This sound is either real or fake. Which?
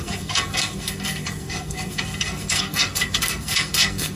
fake